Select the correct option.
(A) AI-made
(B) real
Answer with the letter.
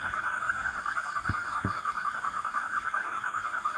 A